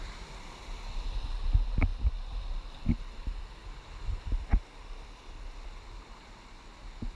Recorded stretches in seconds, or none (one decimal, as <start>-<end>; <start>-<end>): 0.0-7.1